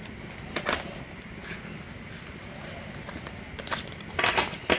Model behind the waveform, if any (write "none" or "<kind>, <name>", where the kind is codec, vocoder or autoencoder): none